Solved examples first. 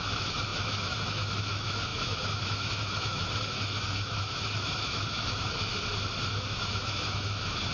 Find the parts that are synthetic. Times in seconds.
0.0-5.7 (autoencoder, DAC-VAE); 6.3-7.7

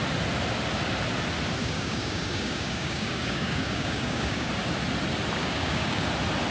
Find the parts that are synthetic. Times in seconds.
1.6-4.5 (codec, DAC); 5.4-6.1

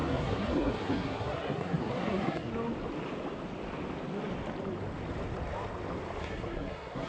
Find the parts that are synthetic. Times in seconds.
0.0-2.5 (codec, SNAC); 6.2-7.1

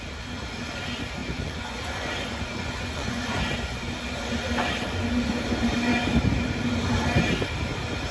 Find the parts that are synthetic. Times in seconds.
1.2-3.9 (vocoder, Vocos)

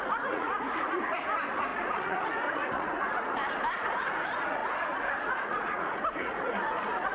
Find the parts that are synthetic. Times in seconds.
0.0-3.4 (vocoder, Vocos); 3.9-7.1